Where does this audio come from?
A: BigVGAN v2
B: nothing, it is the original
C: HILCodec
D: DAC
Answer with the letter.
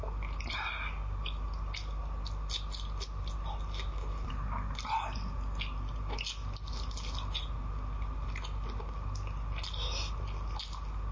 B